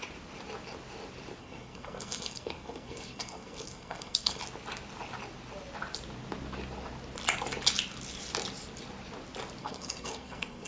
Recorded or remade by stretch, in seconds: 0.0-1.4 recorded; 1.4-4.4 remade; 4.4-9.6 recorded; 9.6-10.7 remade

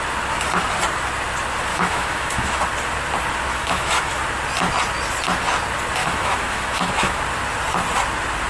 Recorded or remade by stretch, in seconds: 0.0-1.7 recorded; 1.7-2.6 remade; 2.6-3.5 recorded; 3.5-4.2 remade; 4.2-6.0 recorded; 6.0-7.2 remade; 7.2-8.5 recorded